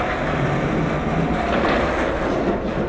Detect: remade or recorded recorded